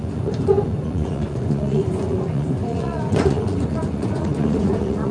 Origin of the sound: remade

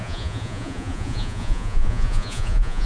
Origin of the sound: remade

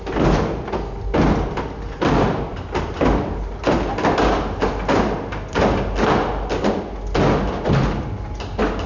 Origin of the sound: recorded